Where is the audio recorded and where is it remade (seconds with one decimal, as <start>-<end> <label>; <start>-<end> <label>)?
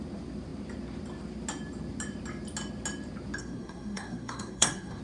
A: 0.0-3.4 recorded; 3.4-5.0 remade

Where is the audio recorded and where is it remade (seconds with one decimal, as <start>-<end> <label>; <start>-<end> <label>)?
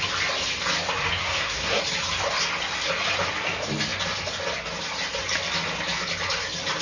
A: 0.0-1.2 recorded; 1.2-1.8 remade; 1.8-6.8 recorded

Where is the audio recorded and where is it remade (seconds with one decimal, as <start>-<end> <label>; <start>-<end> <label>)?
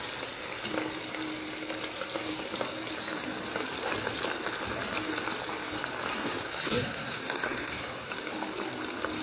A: 0.0-6.1 recorded; 6.1-8.1 remade; 8.1-9.2 recorded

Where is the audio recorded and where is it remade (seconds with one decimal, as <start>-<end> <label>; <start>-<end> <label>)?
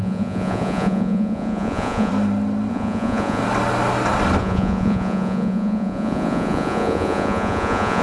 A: 0.0-2.1 remade; 2.1-2.7 recorded; 2.7-3.4 remade; 3.4-4.4 recorded; 4.4-8.0 remade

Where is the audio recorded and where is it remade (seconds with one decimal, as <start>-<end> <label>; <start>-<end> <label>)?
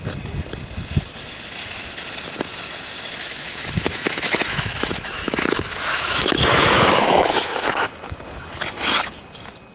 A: 0.0-3.2 recorded; 3.2-7.9 remade; 7.9-9.7 recorded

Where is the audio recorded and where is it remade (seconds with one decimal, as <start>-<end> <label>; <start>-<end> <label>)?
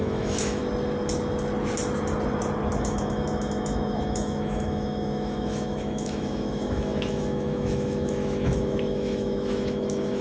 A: 0.0-0.6 remade; 0.6-2.8 recorded; 2.8-10.2 remade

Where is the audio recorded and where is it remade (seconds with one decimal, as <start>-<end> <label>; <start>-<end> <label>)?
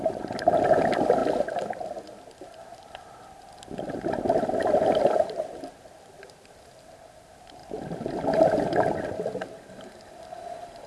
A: 0.0-10.9 recorded